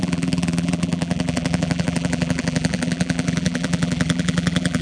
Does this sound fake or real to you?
fake